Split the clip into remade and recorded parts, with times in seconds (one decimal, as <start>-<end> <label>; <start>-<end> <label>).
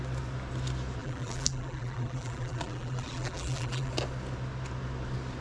0.0-1.0 recorded; 1.0-3.9 remade; 3.9-5.4 recorded